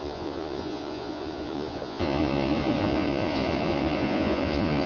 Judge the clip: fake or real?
fake